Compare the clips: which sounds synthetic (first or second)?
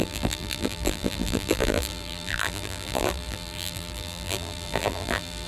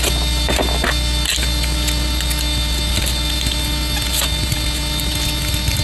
first